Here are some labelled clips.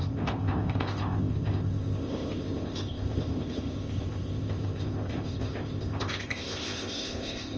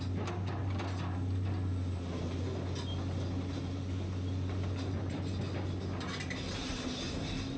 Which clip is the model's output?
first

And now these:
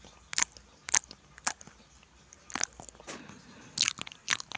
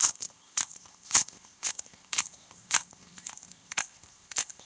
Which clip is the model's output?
second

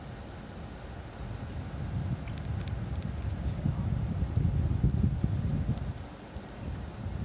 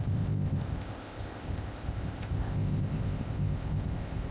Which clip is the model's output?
second